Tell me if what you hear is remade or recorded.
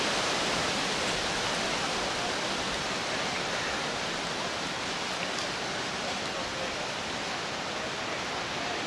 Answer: remade